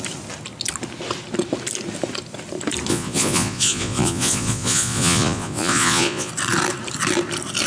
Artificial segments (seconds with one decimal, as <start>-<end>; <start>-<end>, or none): 2.9-6.3